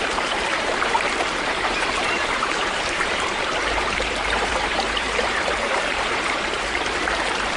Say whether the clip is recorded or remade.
remade